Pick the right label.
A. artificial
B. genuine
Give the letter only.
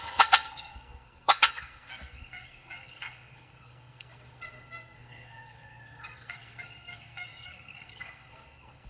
A